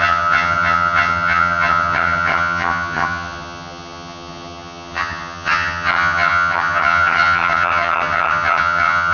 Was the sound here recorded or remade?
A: remade